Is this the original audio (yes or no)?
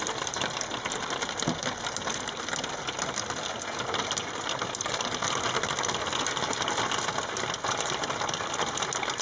yes